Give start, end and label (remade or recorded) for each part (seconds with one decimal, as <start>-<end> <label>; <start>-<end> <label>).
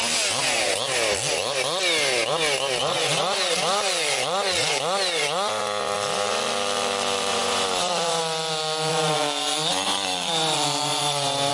0.0-2.8 recorded; 2.8-5.6 remade; 5.6-7.3 recorded; 7.3-8.2 remade; 8.2-8.9 recorded; 8.9-11.5 remade